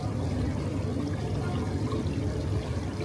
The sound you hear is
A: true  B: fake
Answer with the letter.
A